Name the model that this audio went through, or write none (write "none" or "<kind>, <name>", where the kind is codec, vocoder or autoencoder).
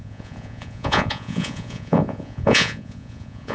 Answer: vocoder, Vocos